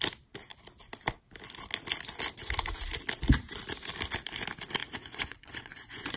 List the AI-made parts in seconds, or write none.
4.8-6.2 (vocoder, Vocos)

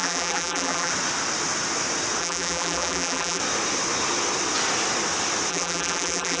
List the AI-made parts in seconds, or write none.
0.0-0.9 (vocoder, BigVGAN v2); 2.2-3.4; 5.5-6.4